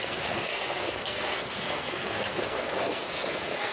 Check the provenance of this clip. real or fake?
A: fake